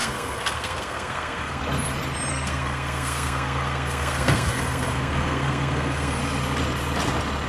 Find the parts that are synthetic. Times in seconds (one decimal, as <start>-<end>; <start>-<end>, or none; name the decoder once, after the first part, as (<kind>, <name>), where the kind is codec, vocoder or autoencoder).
0.0-1.6 (codec, SNAC); 2.3-6.2

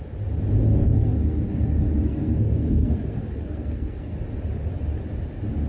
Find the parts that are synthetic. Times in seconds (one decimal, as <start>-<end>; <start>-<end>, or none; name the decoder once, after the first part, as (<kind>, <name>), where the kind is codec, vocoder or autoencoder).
0.8-4.2 (codec, SNAC)

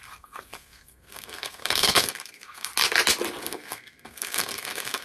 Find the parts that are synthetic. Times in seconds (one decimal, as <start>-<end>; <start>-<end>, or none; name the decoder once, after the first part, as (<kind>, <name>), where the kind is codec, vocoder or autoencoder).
0.0-2.7 (codec, SNAC); 3.4-5.0

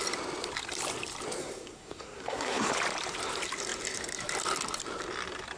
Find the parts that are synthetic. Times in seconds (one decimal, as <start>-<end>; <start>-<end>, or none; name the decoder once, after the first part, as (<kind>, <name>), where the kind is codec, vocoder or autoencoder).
1.4-2.7 (codec, SNAC)